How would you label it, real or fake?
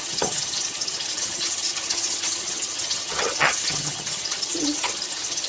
fake